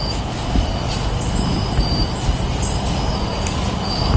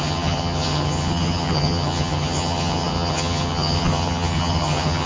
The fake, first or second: second